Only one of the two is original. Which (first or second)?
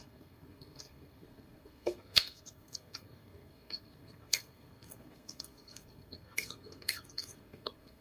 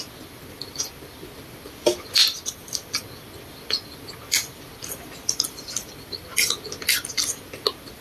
second